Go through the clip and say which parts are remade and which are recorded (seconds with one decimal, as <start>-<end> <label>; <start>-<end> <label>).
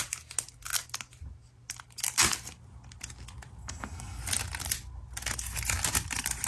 0.0-3.6 recorded; 3.6-4.2 remade; 4.2-6.5 recorded